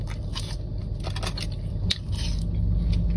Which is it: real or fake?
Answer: real